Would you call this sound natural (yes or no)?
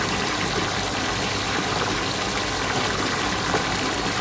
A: yes